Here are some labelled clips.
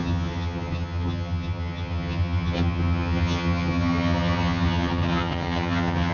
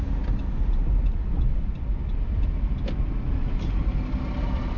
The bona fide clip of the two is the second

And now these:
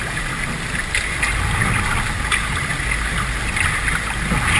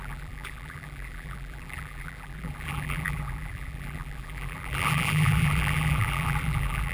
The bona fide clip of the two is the first